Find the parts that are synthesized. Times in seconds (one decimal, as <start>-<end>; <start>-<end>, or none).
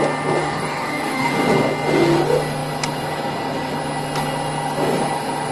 0.4-1.3